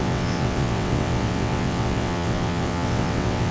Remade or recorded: remade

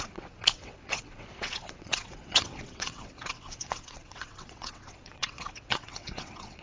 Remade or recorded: remade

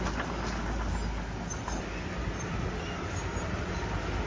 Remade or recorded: recorded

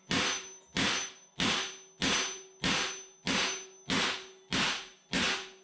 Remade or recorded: recorded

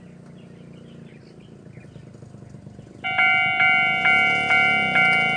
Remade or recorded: recorded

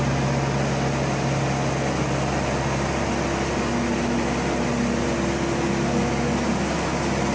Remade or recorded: recorded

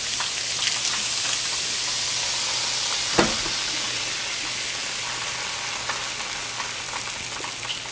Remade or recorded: recorded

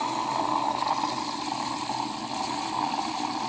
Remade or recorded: recorded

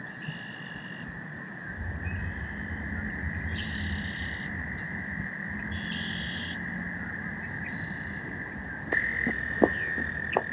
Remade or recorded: recorded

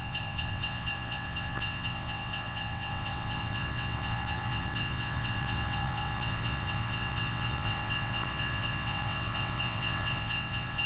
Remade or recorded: remade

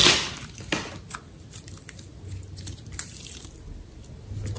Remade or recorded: recorded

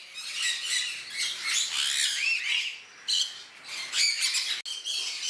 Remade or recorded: recorded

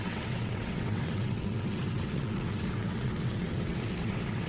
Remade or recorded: remade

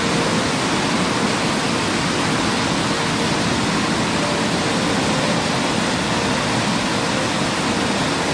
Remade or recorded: recorded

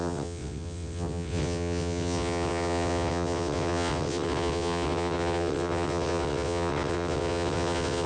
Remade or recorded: remade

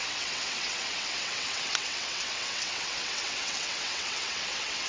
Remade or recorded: remade